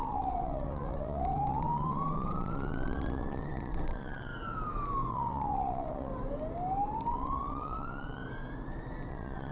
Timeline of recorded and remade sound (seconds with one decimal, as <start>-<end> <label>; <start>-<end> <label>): 0.0-4.3 remade; 4.3-5.1 recorded; 5.1-6.1 remade; 6.1-7.1 recorded; 7.1-8.2 remade; 8.2-9.1 recorded; 9.1-9.5 remade